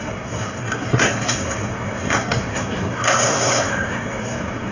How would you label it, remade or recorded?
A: remade